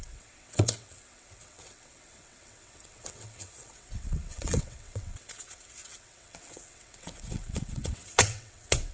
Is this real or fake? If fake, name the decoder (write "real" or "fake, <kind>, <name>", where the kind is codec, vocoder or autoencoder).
fake, vocoder, WaveNeXt